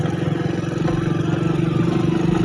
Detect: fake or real real